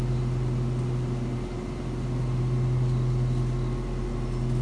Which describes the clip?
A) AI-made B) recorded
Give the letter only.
B